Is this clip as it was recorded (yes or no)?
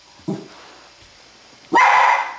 yes